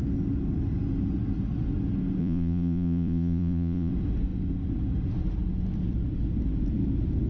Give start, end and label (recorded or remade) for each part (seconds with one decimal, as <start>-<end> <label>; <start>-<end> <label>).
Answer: 0.0-2.2 recorded; 2.2-3.9 remade; 3.9-7.3 recorded